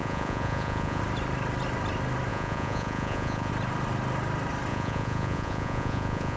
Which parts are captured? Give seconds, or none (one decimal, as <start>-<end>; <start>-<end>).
1.0-2.3; 3.5-4.7